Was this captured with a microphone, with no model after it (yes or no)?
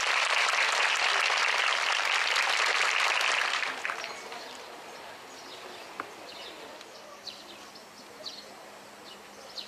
yes